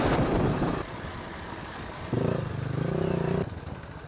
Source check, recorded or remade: remade